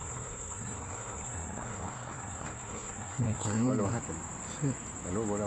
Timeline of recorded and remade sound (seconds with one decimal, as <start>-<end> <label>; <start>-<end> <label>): 0.0-3.7 remade; 3.7-5.5 recorded